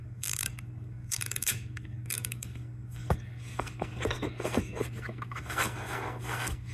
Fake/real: fake